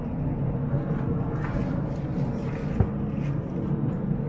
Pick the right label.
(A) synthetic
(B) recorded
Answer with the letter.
B